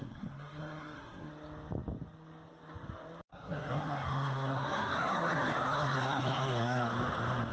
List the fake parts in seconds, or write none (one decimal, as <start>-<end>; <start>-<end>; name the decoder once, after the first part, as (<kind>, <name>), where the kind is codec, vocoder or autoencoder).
0.0-1.3 (codec, SNAC); 3.3-6.9